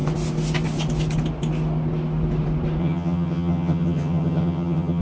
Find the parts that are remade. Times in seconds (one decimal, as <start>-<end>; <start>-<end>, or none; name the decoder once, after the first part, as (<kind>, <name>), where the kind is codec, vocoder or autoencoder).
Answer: 2.8-5.0 (vocoder, HiFi-GAN)